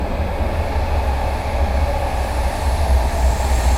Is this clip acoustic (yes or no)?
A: yes